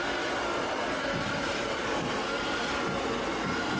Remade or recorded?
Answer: recorded